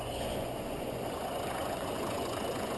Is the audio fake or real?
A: fake